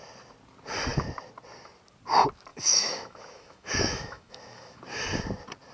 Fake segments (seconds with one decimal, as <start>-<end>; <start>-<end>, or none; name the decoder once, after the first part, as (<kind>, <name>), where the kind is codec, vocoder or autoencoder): 2.5-4.8 (autoencoder, DAC-VAE)